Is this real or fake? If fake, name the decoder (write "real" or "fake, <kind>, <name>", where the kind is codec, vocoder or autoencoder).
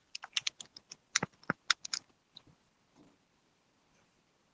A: fake, vocoder, BigVGAN v2